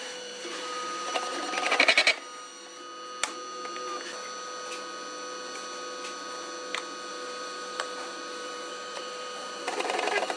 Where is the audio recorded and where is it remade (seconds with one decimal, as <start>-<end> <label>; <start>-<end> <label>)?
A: 0.0-2.0 remade; 2.0-7.1 recorded; 7.1-10.4 remade